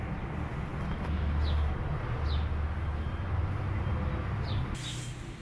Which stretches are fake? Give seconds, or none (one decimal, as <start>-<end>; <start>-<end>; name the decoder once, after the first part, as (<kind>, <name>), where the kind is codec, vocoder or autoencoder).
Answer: none